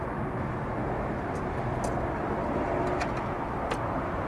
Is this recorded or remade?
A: recorded